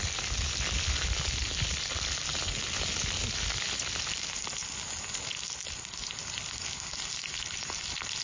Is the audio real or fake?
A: real